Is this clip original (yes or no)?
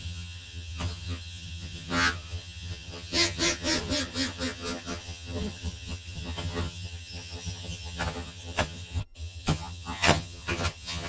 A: no